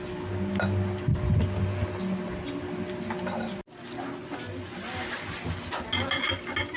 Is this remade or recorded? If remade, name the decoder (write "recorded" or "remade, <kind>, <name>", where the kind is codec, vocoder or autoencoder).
recorded